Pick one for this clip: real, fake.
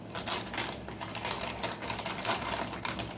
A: real